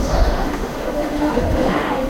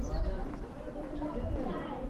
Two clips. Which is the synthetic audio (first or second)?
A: first